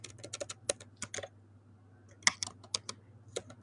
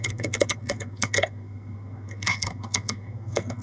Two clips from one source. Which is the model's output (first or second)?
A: second